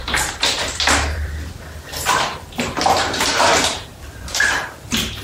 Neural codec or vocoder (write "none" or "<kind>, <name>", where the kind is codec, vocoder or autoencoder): vocoder, BigVGAN v2